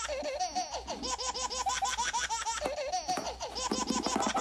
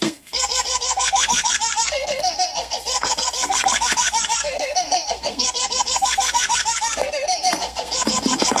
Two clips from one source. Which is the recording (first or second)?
first